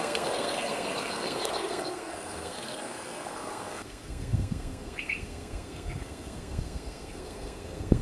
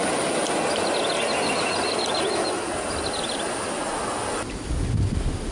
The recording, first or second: second